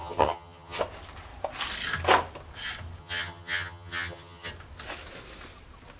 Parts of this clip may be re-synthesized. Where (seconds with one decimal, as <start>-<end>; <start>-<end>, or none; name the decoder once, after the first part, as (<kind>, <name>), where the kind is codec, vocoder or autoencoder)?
0.0-0.8 (vocoder, HiFi-GAN); 3.0-4.5